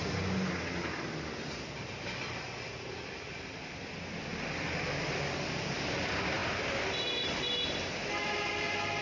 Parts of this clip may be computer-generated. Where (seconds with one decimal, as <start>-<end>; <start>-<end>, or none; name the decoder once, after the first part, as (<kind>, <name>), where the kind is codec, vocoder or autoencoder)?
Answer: none